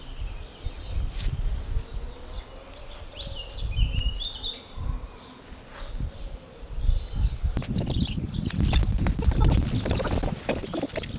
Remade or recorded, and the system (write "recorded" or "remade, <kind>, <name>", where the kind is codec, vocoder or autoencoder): recorded